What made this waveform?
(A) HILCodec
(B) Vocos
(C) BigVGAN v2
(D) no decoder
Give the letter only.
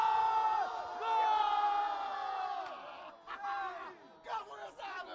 D